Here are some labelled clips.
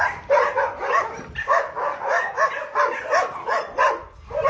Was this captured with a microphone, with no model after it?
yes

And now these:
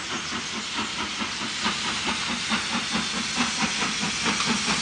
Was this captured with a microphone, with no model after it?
yes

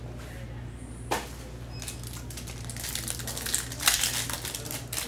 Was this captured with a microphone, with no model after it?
yes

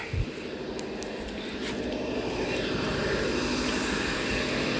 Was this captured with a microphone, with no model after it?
yes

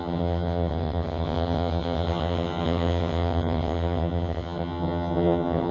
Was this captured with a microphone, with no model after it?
no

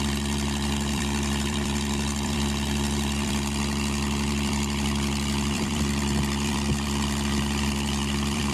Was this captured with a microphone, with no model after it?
no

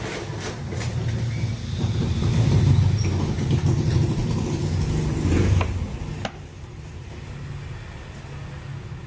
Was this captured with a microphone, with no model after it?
yes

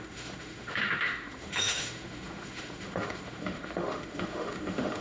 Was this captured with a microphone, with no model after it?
no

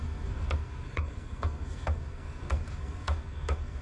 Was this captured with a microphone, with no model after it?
no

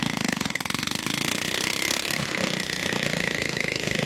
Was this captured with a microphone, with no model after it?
no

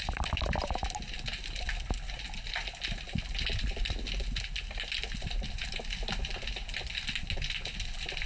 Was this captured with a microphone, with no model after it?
yes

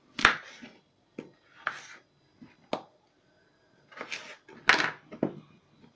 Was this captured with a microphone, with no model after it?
yes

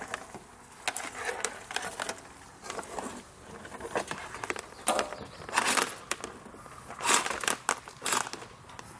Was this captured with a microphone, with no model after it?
yes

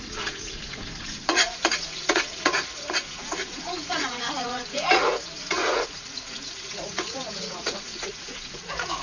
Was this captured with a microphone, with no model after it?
no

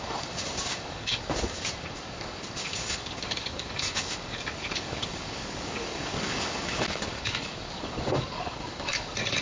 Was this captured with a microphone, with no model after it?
no